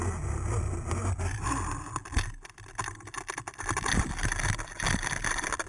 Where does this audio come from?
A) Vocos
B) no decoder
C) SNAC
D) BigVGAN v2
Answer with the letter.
B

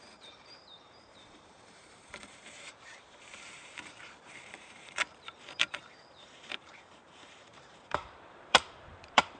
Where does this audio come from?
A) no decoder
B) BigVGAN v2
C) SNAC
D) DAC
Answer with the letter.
B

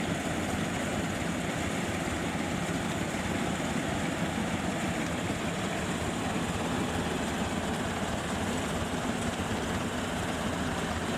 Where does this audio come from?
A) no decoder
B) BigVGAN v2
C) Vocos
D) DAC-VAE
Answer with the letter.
A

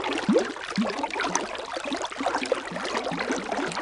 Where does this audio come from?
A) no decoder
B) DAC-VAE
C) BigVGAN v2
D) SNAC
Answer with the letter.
A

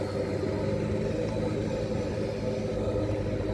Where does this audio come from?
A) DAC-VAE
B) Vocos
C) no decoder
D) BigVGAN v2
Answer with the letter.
C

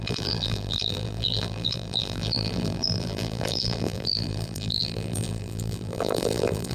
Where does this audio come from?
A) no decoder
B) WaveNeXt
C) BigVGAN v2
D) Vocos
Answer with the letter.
C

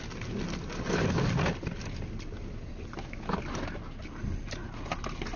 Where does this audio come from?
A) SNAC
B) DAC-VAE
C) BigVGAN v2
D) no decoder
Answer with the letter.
D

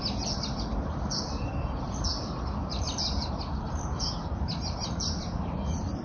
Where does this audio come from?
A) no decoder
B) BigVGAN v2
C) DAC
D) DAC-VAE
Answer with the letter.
B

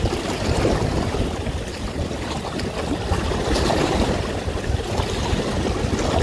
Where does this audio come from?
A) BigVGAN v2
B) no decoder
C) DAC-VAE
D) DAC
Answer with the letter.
B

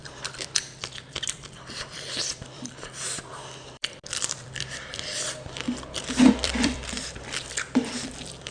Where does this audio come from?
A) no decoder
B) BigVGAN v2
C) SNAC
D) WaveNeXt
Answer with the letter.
B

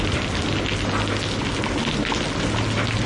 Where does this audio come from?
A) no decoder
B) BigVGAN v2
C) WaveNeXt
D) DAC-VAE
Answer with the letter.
A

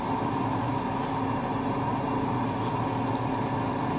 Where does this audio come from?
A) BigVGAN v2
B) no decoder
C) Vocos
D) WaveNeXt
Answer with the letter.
B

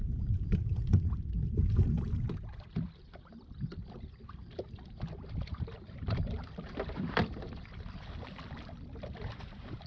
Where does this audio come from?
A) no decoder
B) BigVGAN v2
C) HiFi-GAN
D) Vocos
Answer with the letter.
B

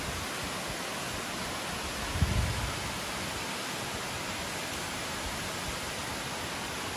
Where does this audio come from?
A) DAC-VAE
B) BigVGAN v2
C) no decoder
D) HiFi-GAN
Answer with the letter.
C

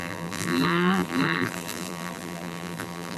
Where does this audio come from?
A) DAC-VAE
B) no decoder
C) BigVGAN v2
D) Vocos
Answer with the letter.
C